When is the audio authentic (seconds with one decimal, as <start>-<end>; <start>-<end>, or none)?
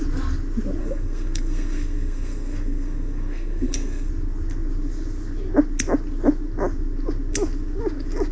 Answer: 0.0-0.8; 4.1-8.3